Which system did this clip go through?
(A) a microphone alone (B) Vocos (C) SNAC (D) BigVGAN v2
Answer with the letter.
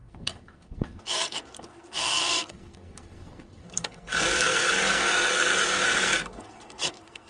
C